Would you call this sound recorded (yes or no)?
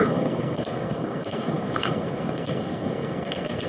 no